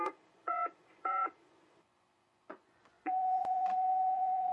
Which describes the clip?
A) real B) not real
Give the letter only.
B